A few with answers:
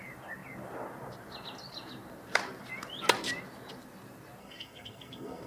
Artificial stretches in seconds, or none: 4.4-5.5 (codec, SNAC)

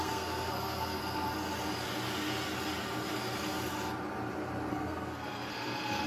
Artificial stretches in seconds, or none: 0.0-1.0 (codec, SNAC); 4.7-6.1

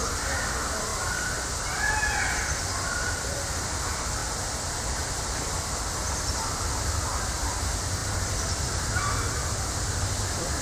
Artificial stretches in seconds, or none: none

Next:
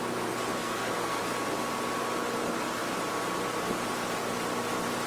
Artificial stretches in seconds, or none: 0.6-1.2 (codec, SNAC)

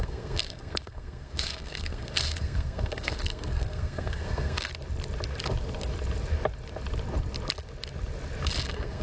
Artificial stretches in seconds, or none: 0.0-4.7 (codec, SNAC); 8.6-9.0